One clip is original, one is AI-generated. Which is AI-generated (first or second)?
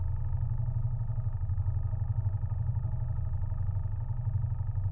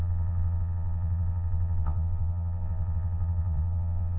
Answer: second